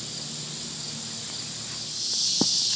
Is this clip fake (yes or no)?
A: no